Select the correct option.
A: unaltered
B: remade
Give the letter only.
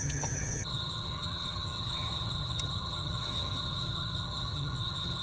B